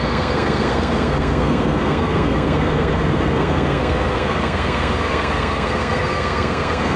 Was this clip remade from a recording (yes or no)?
yes